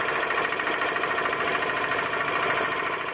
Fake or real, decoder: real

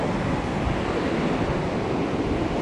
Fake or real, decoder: real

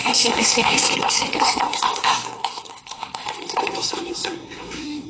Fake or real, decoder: fake, codec, SNAC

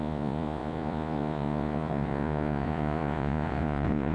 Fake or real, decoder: fake, vocoder, Vocos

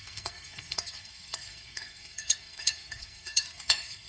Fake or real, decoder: fake, codec, SNAC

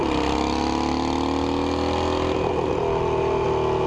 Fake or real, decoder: real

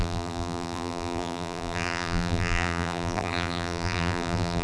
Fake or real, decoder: fake, vocoder, BigVGAN v2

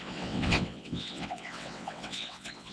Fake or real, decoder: fake, vocoder, WaveNeXt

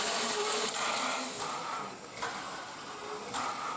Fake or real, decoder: real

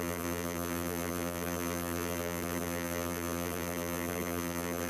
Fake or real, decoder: fake, vocoder, BigVGAN v2